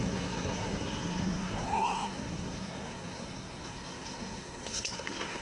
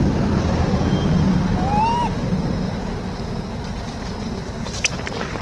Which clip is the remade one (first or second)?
first